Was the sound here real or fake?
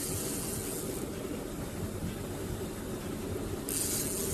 real